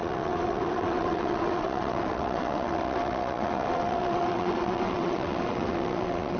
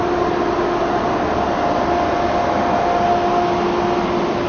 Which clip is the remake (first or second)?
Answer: first